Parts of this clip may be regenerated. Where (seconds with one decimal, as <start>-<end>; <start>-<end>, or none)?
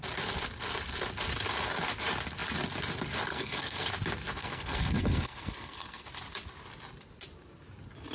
3.3-3.9; 4.4-6.1